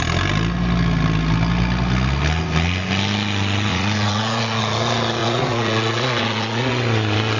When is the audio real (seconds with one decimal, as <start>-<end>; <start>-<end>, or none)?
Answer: 0.0-3.7; 4.6-5.2; 6.7-7.4